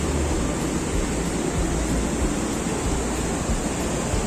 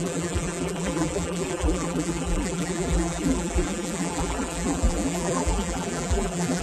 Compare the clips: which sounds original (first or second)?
first